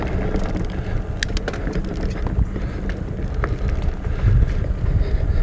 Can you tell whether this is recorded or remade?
recorded